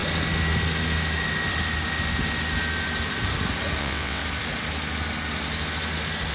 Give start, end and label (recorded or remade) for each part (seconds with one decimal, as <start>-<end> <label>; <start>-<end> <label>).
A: 0.0-3.8 recorded; 3.8-4.2 remade; 4.2-6.3 recorded